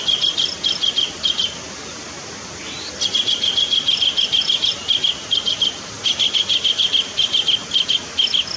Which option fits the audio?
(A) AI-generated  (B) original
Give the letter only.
B